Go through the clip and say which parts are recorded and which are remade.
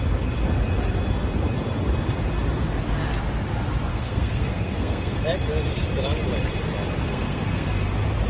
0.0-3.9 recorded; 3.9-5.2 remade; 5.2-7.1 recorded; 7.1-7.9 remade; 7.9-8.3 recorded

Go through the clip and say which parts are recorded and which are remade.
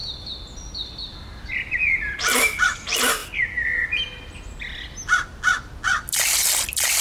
0.0-7.0 recorded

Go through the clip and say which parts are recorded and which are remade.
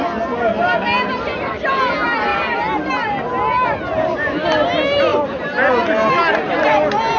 0.0-7.2 recorded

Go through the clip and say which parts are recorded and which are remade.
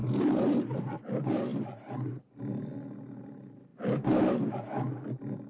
0.0-0.8 remade; 0.8-5.5 recorded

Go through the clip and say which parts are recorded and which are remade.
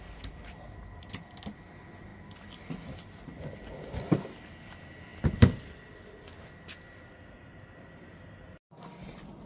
0.0-9.5 recorded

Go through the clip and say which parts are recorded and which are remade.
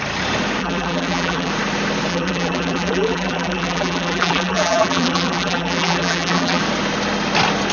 0.0-0.6 recorded; 0.6-1.5 remade; 1.5-2.1 recorded; 2.1-6.6 remade; 6.6-7.7 recorded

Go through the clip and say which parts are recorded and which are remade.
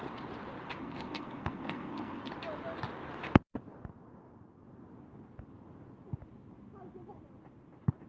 0.0-0.8 recorded; 0.8-2.3 remade; 2.3-8.1 recorded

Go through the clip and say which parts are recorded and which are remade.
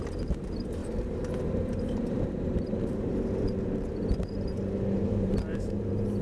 0.0-3.1 remade; 3.1-3.9 recorded; 3.9-4.5 remade; 4.5-5.1 recorded; 5.1-6.2 remade